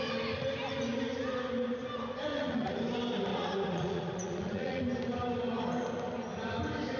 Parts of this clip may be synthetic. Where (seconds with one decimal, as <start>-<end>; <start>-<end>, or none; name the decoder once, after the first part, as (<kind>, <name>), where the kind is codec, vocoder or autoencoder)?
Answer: 2.3-2.8 (vocoder, Vocos); 3.3-4.8